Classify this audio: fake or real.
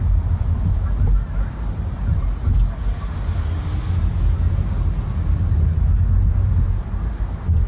real